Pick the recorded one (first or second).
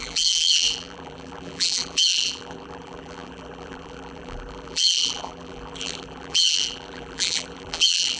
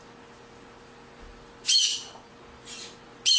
second